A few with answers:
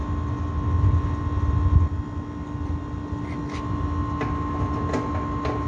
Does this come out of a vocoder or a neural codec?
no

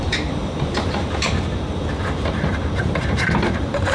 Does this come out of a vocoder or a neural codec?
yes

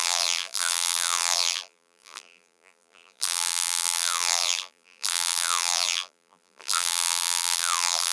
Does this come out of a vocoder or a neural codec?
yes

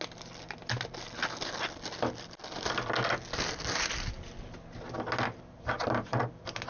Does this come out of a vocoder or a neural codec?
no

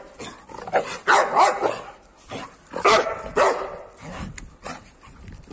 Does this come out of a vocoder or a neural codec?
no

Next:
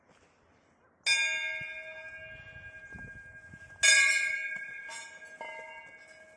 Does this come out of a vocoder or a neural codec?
no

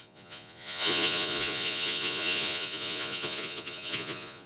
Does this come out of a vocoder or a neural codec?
yes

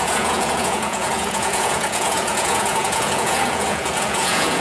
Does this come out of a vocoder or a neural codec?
yes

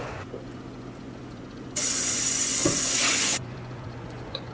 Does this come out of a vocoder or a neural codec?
yes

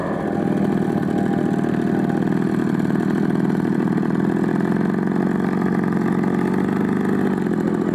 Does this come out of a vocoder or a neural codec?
no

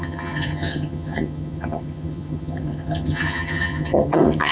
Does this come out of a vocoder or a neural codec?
yes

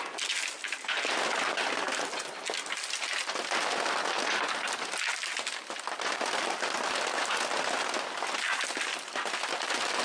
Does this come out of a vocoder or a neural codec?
no